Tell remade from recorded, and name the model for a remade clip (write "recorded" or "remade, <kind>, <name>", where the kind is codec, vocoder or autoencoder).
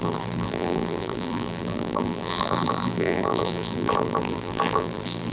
remade, vocoder, BigVGAN v2